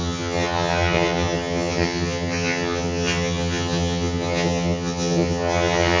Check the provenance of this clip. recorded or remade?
remade